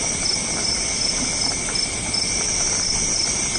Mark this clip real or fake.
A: real